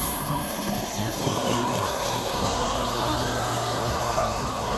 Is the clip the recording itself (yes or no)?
no